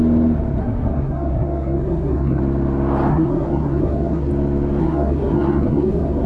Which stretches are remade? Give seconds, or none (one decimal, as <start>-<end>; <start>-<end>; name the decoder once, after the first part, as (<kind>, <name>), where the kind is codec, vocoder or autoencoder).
0.6-2.4 (codec, SNAC); 3.1-4.3; 4.8-6.3